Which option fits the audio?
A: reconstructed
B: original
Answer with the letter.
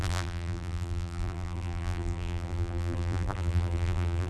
A